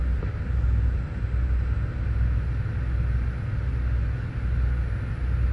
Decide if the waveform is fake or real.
real